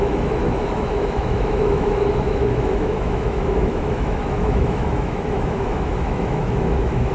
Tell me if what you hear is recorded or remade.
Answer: remade